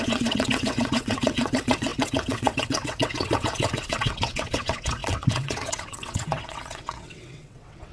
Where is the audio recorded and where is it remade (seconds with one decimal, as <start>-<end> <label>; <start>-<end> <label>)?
0.0-7.9 remade